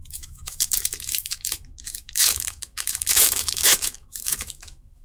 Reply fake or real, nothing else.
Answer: fake